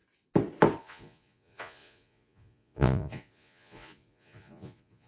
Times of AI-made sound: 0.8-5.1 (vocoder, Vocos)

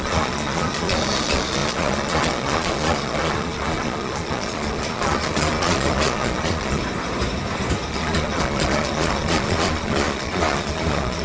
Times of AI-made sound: 0.0-6.8 (vocoder, Vocos); 7.9-11.2

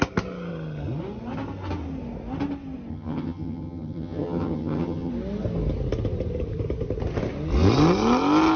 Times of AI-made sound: 2.9-5.1 (vocoder, HiFi-GAN)

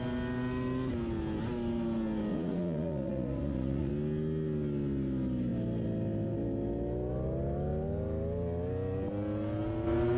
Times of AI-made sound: 2.3-3.9 (vocoder, Vocos)

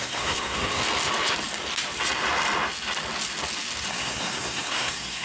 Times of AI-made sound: 0.0-0.8 (codec, SNAC); 3.9-5.2

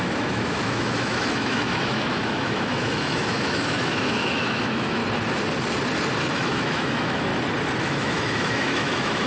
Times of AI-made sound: 0.0-5.0 (autoencoder, DAC-VAE); 6.3-7.3; 7.8-9.3

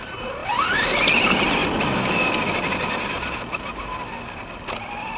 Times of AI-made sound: none